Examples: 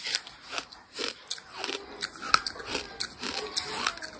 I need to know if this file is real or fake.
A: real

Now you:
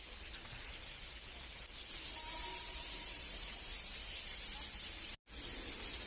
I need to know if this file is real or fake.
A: real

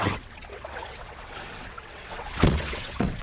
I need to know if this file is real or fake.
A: fake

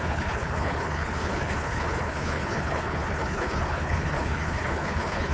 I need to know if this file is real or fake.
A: fake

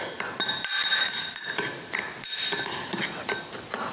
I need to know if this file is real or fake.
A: real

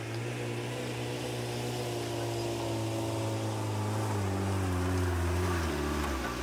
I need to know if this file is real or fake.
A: real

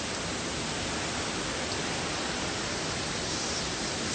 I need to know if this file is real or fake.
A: real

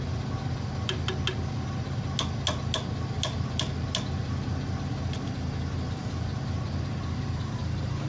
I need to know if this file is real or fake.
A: real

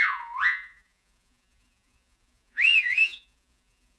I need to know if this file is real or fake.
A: fake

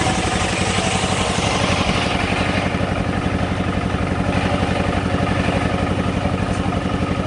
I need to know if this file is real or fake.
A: real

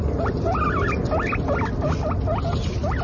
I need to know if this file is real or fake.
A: real